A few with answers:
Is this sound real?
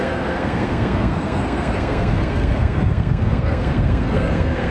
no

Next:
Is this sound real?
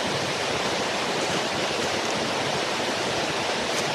no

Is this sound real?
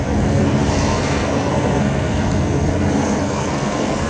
no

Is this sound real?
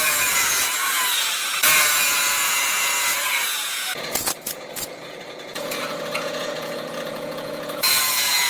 no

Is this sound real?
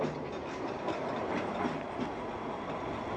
yes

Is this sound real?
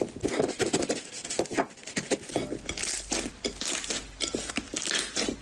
yes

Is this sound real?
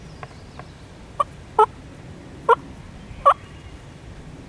no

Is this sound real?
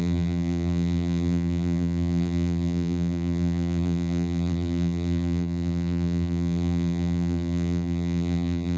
no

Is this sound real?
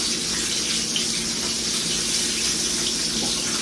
yes